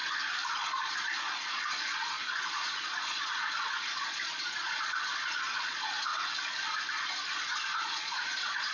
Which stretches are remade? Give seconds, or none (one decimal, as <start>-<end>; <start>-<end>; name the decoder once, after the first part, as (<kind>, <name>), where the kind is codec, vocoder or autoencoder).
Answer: 0.5-6.1 (vocoder, Vocos); 6.9-8.7